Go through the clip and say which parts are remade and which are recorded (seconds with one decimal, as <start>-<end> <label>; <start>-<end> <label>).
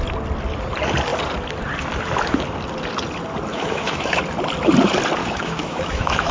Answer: 0.0-3.5 recorded; 3.5-4.2 remade; 4.2-5.2 recorded; 5.2-6.3 remade